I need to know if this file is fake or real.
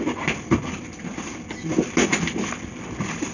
real